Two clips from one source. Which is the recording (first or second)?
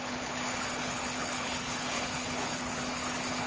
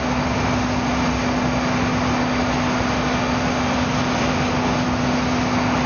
second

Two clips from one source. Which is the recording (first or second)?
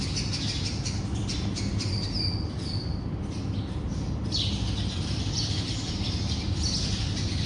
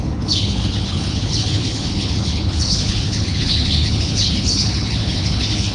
first